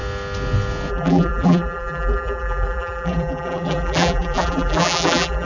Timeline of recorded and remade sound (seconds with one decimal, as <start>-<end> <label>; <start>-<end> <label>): 0.0-0.9 recorded; 0.9-5.4 remade